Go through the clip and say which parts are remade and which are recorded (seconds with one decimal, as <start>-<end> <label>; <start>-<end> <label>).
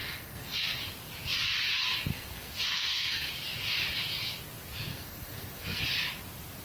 0.0-0.8 remade; 0.8-2.1 recorded; 2.1-3.3 remade; 3.3-4.9 recorded; 4.9-5.8 remade; 5.8-6.6 recorded